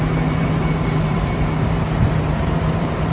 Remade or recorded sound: remade